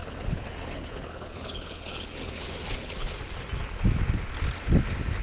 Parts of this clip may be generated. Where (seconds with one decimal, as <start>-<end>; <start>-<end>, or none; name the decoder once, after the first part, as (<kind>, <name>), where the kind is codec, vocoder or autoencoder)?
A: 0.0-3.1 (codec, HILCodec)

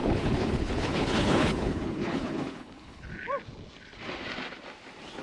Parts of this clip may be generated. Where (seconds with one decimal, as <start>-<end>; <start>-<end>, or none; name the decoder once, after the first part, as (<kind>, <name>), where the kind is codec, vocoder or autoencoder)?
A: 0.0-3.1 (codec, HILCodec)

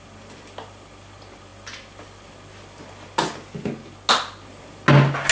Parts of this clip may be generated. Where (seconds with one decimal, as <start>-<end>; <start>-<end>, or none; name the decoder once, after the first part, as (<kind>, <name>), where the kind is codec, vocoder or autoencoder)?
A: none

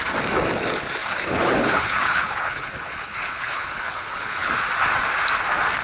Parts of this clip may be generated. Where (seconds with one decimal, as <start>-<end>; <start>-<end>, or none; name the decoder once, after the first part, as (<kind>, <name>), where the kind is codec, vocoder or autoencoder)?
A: 1.0-4.5 (codec, HILCodec)

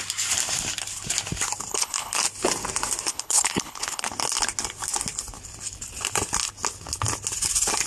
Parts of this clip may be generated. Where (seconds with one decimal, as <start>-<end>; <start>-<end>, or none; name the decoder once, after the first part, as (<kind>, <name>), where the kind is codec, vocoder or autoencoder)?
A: 1.7-2.2 (codec, HILCodec); 3.1-4.1

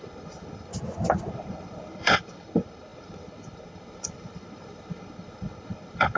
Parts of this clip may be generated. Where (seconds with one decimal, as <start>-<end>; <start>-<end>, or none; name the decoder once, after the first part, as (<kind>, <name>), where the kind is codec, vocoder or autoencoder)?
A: 0.0-0.7 (codec, HILCodec); 1.3-6.2

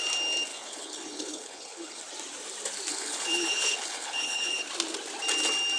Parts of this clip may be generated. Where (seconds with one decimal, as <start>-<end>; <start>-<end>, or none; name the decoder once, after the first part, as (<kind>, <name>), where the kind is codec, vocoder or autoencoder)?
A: 0.5-2.0 (codec, HILCodec); 2.9-4.6

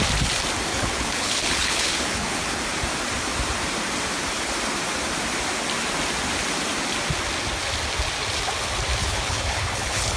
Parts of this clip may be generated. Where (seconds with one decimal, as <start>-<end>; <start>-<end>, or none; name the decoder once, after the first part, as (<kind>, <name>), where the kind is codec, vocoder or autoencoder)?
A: 0.7-2.6 (codec, HILCodec); 9.0-10.2